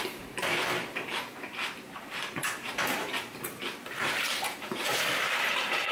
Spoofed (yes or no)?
yes